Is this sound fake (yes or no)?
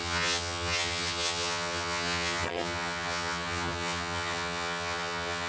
yes